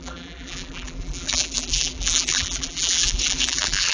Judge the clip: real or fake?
fake